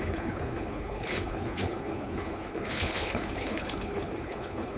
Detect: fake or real fake